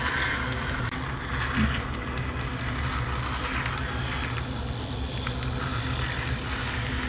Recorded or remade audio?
recorded